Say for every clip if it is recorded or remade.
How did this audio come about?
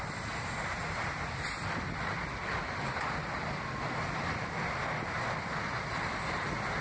recorded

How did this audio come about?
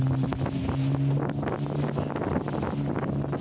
recorded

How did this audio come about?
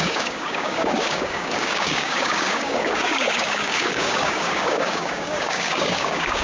remade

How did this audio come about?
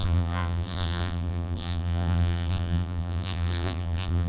remade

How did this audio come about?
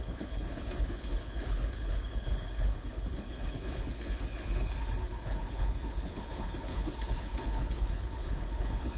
remade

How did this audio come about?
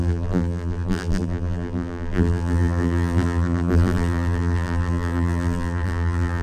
remade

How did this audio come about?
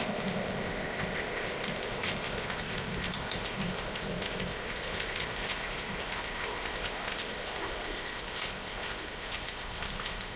remade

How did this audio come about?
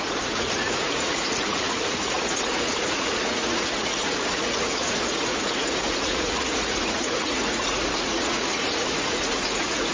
remade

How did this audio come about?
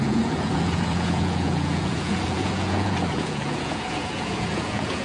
remade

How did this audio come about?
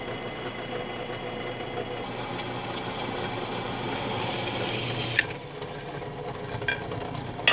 recorded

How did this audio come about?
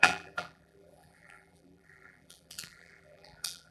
remade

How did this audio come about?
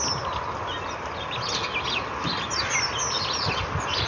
recorded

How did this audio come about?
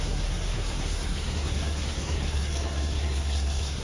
remade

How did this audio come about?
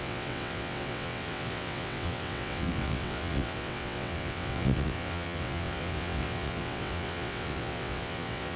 remade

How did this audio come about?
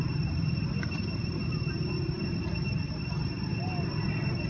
recorded